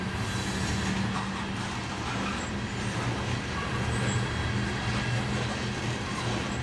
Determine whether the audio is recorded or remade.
recorded